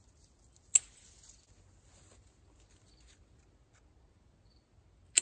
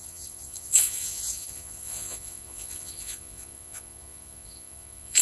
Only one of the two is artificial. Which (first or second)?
second